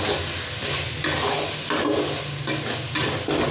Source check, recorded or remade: recorded